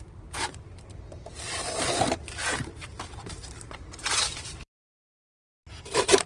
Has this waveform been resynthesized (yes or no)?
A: yes